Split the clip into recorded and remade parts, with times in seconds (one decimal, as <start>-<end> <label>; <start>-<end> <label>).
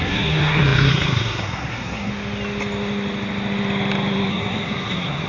0.0-2.1 remade; 2.1-4.3 recorded; 4.3-5.3 remade